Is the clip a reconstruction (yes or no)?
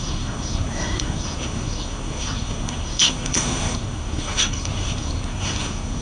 yes